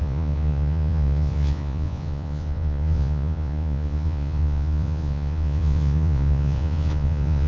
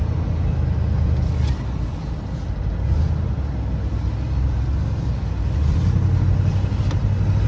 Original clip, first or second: second